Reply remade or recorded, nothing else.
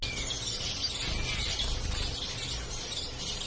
recorded